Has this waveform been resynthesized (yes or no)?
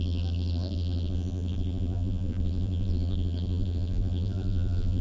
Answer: yes